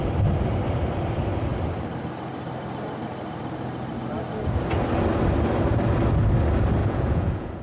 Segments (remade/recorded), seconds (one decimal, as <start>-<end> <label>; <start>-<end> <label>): 0.0-6.8 recorded; 6.8-7.6 remade